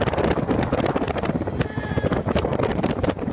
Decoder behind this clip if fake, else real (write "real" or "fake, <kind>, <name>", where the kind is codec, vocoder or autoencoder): real